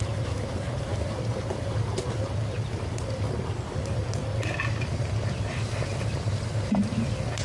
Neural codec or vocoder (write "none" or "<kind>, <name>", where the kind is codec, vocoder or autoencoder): none